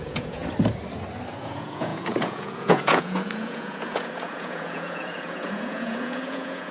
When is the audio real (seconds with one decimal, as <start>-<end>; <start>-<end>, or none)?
0.4-1.3